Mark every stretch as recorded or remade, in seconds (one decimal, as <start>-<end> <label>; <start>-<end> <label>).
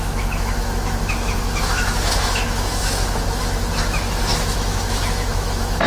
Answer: 0.0-5.9 remade